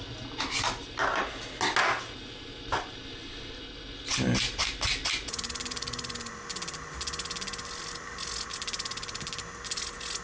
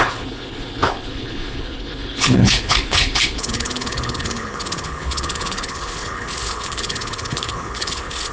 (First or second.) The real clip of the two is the first